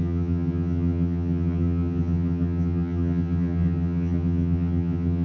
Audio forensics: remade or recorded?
remade